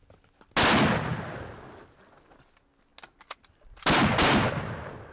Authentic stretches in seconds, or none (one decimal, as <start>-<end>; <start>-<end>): 0.0-5.1